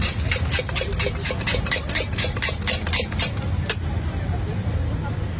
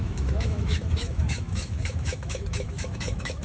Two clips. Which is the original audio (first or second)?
first